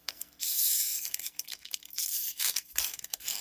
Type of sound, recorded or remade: remade